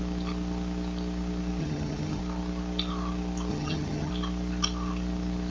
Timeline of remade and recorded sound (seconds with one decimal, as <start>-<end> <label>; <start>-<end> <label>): 0.0-1.6 recorded; 1.6-2.2 remade; 2.2-3.5 recorded; 3.5-4.1 remade; 4.1-5.5 recorded